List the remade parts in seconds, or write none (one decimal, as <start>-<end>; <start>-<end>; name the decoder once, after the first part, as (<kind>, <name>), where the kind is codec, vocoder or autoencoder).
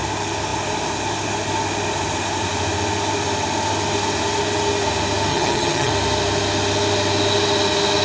5.3-5.9 (vocoder, HiFi-GAN)